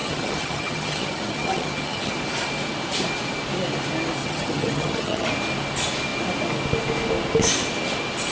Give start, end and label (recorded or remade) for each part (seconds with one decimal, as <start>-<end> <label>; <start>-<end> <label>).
0.0-2.1 remade; 2.1-4.2 recorded; 4.2-5.3 remade; 5.3-8.3 recorded

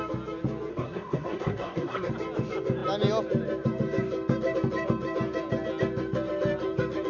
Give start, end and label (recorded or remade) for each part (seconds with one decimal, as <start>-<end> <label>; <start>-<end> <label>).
0.0-0.7 recorded; 0.7-2.1 remade; 2.1-7.1 recorded

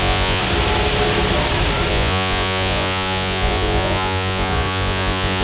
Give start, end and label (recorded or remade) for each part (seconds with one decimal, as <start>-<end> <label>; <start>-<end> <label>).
0.0-0.4 remade; 0.4-1.9 recorded; 1.9-5.4 remade

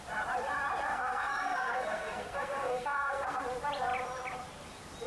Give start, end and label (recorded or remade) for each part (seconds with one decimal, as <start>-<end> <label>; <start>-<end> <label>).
0.0-0.9 recorded; 0.9-3.4 remade; 3.4-5.1 recorded